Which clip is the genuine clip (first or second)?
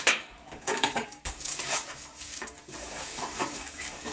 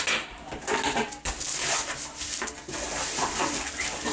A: second